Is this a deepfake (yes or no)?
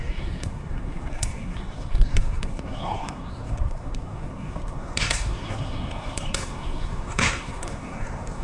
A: yes